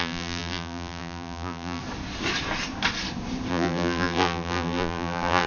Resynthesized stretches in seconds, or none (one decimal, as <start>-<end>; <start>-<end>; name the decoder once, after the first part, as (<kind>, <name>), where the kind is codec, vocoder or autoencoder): 0.0-1.8 (vocoder, BigVGAN v2); 3.5-5.5